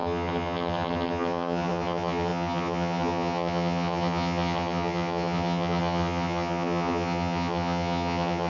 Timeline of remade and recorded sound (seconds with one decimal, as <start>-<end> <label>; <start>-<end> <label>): 0.0-8.5 remade